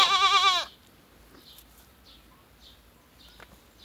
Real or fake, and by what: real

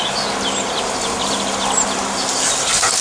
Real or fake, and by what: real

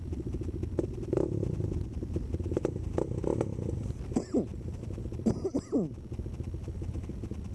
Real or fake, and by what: real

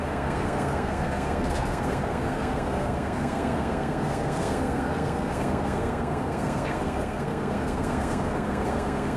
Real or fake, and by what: fake, codec, SNAC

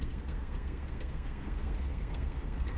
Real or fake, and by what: fake, codec, SNAC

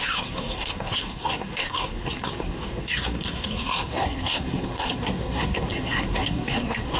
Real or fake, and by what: fake, codec, SNAC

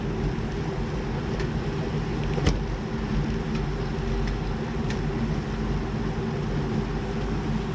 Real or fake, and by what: real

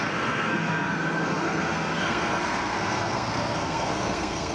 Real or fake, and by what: fake, codec, SNAC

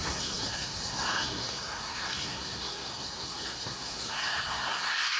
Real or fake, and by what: fake, codec, SNAC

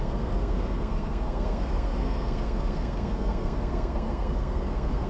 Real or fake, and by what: fake, codec, SNAC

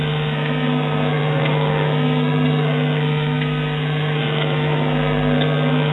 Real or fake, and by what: fake, codec, SNAC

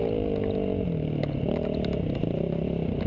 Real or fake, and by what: real